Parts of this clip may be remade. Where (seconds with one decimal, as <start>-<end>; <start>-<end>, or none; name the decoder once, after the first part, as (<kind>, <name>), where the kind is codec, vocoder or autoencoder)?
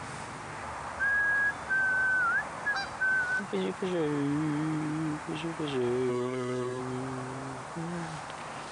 6.1-6.8 (codec, SNAC)